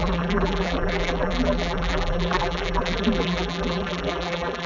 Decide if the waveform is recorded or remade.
remade